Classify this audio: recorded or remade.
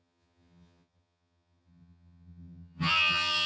remade